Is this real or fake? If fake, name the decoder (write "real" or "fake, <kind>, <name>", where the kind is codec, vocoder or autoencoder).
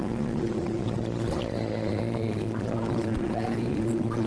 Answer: fake, vocoder, Vocos